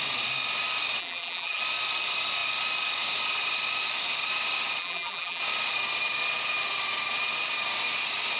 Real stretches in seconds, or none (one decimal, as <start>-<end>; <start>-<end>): 0.0-1.0; 1.6-4.8; 5.4-8.4